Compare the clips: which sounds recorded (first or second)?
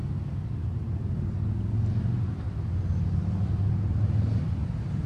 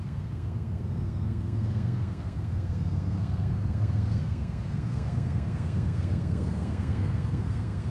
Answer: first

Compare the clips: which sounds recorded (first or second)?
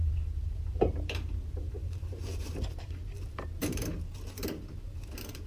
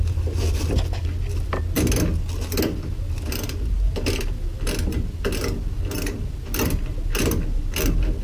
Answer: second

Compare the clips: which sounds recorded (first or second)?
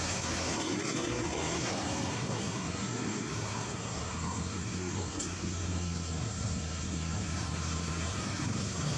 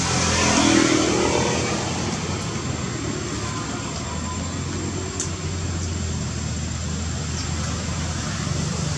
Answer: second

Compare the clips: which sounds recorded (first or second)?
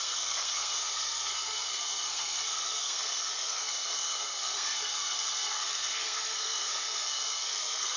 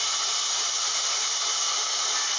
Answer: second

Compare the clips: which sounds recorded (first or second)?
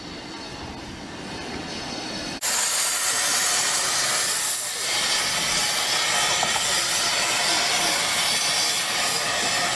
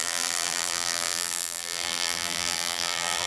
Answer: first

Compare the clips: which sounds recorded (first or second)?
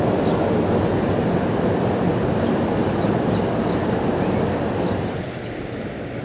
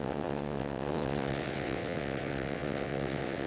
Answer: first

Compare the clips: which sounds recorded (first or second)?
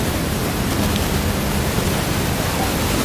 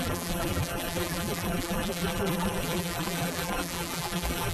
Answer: first